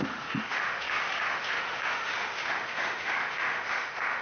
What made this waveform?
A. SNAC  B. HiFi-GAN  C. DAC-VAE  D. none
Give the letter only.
C